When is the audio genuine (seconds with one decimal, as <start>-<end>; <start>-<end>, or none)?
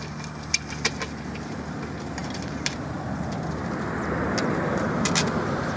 0.0-5.8